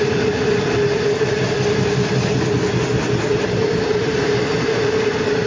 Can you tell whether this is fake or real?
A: real